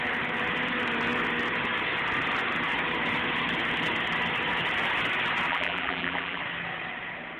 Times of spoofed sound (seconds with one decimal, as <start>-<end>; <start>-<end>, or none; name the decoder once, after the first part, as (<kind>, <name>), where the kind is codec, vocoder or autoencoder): 5.5-6.4 (vocoder, BigVGAN v2)